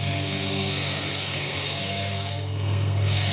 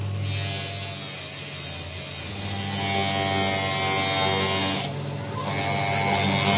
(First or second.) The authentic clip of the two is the second